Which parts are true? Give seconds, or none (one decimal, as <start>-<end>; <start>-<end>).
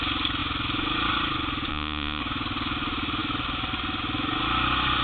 0.0-1.7; 2.2-5.0